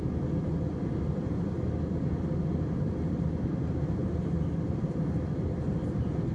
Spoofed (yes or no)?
no